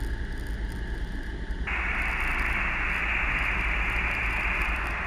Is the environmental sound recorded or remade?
recorded